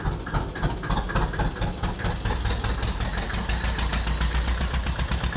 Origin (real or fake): real